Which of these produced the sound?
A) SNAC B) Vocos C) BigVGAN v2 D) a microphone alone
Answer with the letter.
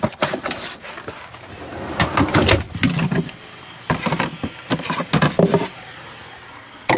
D